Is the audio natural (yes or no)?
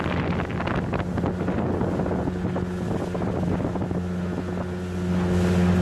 yes